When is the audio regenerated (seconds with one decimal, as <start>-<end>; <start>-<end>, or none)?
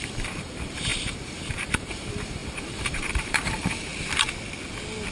0.0-3.9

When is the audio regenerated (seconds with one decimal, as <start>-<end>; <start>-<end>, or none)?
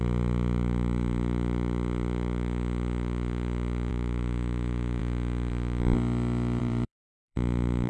0.0-5.5; 6.6-7.9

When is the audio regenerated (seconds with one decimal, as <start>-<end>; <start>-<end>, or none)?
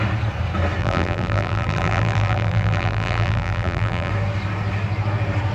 0.8-4.1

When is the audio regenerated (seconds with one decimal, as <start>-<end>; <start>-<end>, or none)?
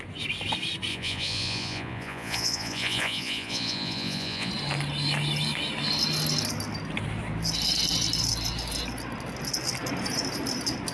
0.9-4.5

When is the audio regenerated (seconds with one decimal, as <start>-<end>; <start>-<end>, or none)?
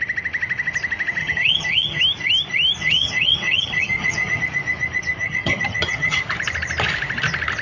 1.2-2.0; 2.8-4.4; 5.2-6.2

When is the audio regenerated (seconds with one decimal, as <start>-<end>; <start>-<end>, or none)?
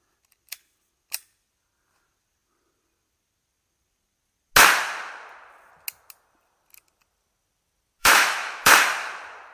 8.0-8.7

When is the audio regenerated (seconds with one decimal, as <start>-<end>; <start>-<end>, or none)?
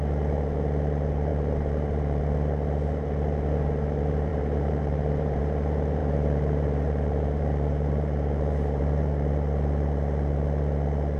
1.3-2.2; 4.3-5.4; 6.0-8.8